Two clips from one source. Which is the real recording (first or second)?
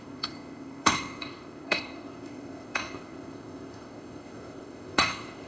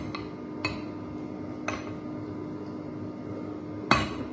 second